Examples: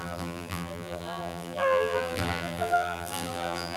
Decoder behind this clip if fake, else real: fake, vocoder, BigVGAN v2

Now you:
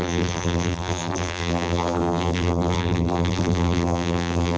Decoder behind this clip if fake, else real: fake, vocoder, BigVGAN v2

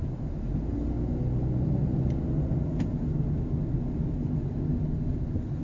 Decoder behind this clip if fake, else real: real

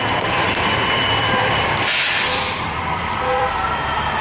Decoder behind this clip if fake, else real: fake, vocoder, BigVGAN v2